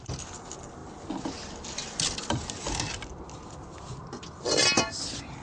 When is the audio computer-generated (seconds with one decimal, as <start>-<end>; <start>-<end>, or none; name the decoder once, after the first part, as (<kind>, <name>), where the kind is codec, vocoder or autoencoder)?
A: none